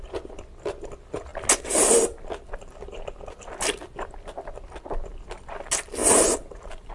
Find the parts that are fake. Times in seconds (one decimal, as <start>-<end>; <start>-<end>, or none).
6.0-6.9